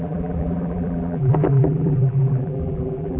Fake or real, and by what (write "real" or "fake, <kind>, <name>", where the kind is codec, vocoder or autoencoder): fake, vocoder, BigVGAN v2